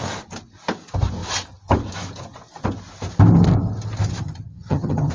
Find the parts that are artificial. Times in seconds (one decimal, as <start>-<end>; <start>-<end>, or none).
4.2-5.1